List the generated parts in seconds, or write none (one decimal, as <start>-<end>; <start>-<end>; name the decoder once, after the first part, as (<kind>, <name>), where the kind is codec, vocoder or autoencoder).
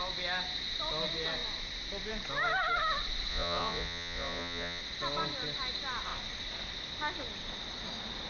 3.3-4.8 (vocoder, Vocos)